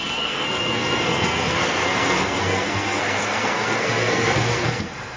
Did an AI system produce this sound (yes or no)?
yes